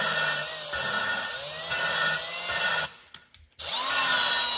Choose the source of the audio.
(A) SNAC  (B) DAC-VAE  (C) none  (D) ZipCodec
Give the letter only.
C